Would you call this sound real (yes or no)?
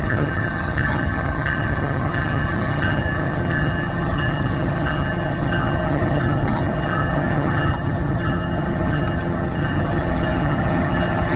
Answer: no